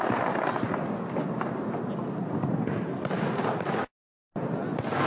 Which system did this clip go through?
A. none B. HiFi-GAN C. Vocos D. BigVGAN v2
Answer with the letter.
A